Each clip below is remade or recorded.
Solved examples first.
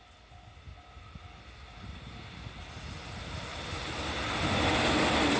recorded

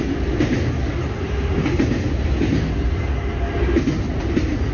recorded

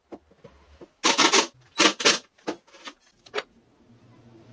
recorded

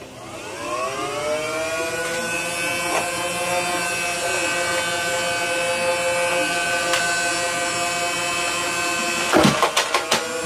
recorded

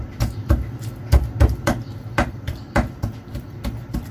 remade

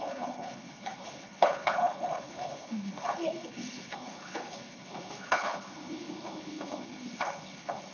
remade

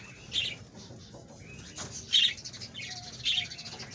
recorded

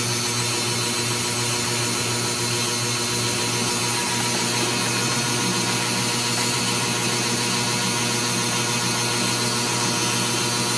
recorded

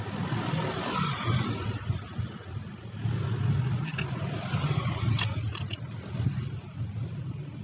recorded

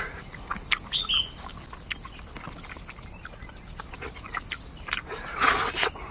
recorded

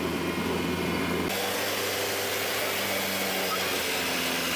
recorded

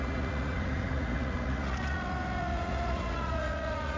remade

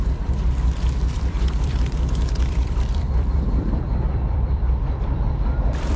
remade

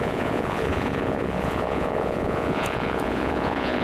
remade